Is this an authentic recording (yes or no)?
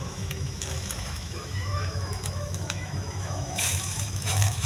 no